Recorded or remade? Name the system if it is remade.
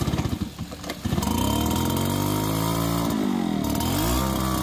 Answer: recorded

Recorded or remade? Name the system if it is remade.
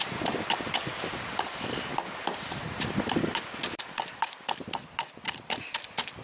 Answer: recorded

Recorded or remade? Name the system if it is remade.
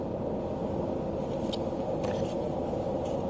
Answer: recorded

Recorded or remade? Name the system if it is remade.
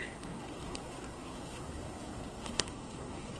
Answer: remade, codec, SNAC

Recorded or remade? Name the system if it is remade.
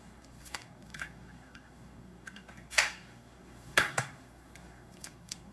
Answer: remade, codec, SNAC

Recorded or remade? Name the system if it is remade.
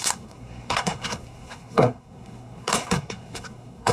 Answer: remade, codec, SNAC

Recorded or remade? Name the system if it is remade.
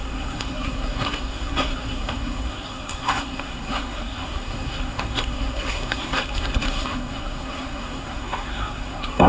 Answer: remade, codec, SNAC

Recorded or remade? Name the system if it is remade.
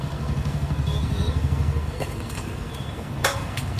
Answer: remade, codec, SNAC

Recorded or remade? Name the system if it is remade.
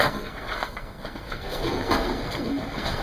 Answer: remade, codec, SNAC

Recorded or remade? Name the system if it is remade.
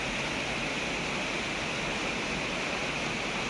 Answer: recorded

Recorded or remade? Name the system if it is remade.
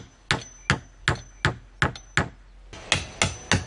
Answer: recorded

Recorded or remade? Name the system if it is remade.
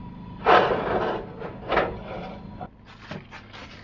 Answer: recorded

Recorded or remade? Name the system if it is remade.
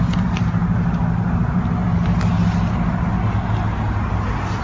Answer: recorded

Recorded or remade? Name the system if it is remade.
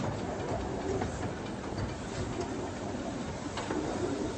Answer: recorded